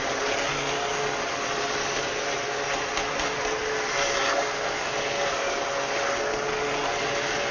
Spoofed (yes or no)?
no